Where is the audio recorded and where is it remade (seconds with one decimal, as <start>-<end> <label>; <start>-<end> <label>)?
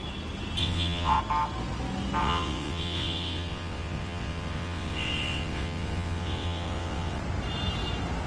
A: 0.0-0.6 recorded; 0.6-1.2 remade; 1.2-2.2 recorded; 2.2-7.2 remade; 7.2-8.3 recorded